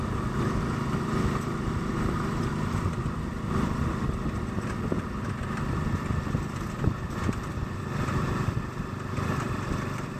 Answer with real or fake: fake